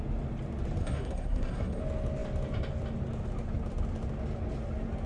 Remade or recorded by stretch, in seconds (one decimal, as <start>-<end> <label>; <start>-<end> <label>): 0.0-0.8 recorded; 0.8-1.8 remade; 1.8-5.1 recorded